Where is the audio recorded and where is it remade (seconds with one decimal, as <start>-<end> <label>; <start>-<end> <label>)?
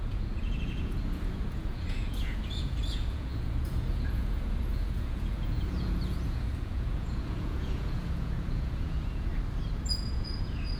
0.0-9.3 remade; 9.3-9.9 recorded; 9.9-10.8 remade